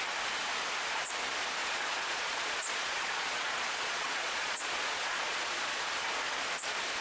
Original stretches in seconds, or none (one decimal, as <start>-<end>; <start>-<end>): 0.0-1.6; 5.8-7.0